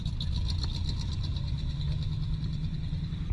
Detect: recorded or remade recorded